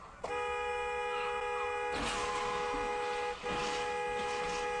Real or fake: real